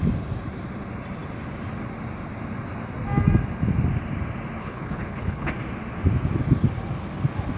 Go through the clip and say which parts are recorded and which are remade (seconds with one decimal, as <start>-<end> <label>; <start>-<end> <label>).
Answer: 0.0-4.6 recorded; 4.6-5.5 remade; 5.5-7.6 recorded